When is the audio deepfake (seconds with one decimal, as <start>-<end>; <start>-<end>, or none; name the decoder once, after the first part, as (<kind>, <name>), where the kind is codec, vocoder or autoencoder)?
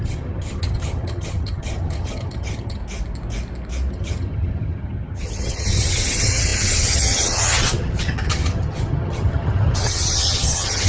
0.0-2.8 (vocoder, HiFi-GAN); 3.9-10.9